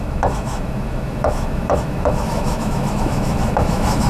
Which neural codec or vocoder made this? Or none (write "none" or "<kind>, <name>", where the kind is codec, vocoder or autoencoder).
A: autoencoder, DAC-VAE